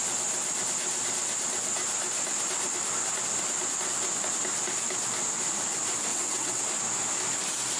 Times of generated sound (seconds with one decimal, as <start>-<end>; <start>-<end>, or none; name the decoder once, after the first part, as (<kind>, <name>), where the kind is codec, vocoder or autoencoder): 6.1-6.6 (vocoder, WaveNeXt)